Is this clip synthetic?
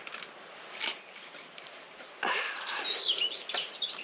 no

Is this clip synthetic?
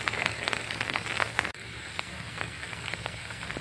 yes